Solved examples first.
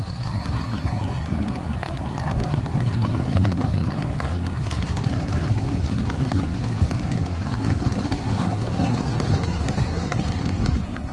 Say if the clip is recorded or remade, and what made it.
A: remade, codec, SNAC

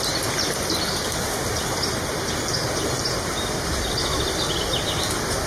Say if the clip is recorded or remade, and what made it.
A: recorded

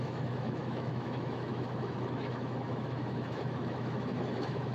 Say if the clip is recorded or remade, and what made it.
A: remade, autoencoder, DAC-VAE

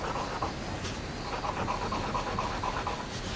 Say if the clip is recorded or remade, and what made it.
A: recorded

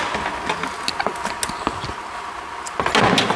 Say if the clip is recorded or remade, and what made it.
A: recorded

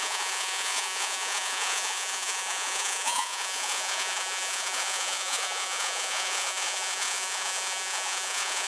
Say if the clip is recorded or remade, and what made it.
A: remade, vocoder, Vocos